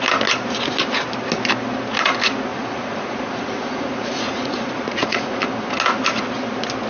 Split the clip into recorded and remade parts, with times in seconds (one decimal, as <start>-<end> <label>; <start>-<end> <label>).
0.0-2.5 recorded; 2.5-5.4 remade; 5.4-6.9 recorded